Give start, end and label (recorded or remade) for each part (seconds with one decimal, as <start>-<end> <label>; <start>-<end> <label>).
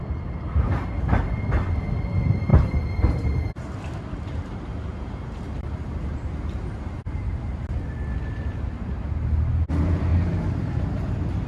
0.0-2.5 recorded; 2.5-7.3 remade; 7.3-11.5 recorded